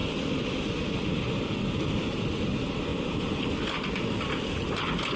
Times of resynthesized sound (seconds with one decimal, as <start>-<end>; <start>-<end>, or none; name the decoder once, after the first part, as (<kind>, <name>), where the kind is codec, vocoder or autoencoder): 0.0-2.2 (vocoder, BigVGAN v2); 2.9-3.5